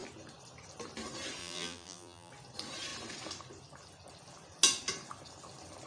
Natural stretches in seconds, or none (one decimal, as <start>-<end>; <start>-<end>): 0.0-1.4; 2.3-5.9